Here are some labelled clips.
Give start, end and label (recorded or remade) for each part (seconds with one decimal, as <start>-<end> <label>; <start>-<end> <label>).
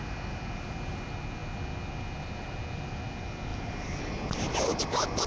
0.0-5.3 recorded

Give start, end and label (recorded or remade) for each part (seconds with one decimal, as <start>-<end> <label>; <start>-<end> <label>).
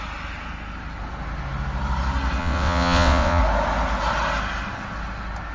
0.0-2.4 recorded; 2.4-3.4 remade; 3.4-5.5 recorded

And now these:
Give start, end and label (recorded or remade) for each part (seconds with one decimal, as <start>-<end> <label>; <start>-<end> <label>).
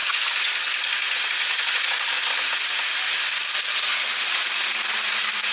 0.0-5.5 recorded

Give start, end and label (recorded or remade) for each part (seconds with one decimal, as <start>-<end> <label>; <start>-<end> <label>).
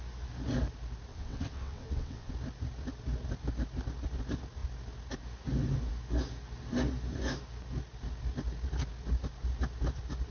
0.0-1.1 recorded; 1.1-2.3 remade; 2.3-10.3 recorded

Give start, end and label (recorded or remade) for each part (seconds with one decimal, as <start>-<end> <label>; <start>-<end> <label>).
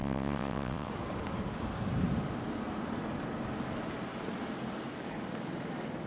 0.0-0.9 remade; 0.9-6.1 recorded